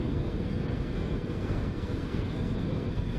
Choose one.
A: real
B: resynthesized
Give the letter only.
B